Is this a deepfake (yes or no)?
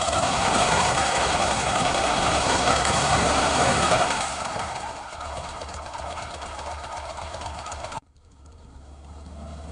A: yes